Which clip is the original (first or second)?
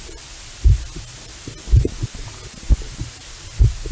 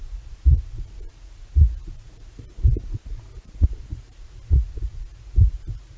first